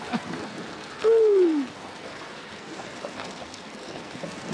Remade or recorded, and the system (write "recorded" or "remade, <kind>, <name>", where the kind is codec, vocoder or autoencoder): remade, codec, SNAC